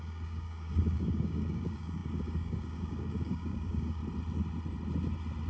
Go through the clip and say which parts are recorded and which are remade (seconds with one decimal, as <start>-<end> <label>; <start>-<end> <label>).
0.0-4.0 remade; 4.0-5.5 recorded